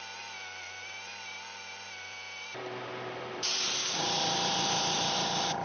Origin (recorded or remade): remade